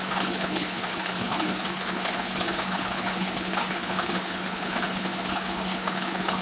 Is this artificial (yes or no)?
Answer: yes